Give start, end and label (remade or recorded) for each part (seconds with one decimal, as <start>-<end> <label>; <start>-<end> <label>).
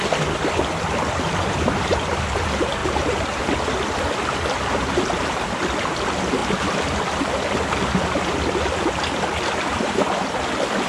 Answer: 0.0-2.8 recorded; 2.8-3.4 remade; 3.4-10.9 recorded